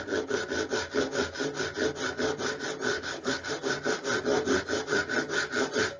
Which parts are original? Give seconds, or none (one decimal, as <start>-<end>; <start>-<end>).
0.0-2.9; 3.5-6.0